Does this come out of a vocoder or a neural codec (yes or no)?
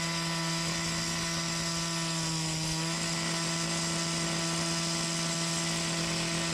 no